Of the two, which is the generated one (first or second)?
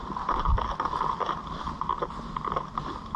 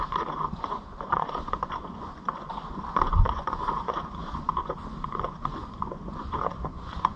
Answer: second